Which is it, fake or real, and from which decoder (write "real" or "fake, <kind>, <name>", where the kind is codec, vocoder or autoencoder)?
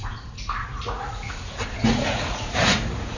fake, vocoder, Vocos